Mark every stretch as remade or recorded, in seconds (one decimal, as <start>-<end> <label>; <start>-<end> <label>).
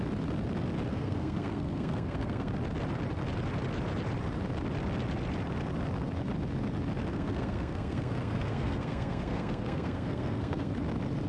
0.0-0.9 recorded; 0.9-2.5 remade; 2.5-7.1 recorded; 7.1-10.7 remade; 10.7-11.3 recorded